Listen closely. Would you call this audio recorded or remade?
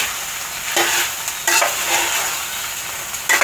recorded